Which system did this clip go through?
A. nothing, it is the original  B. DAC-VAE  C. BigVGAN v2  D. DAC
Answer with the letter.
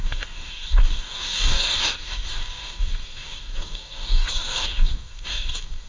D